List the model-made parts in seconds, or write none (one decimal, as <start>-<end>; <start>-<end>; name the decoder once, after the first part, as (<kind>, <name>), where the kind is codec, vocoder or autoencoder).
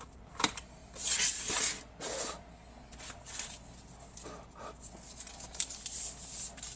none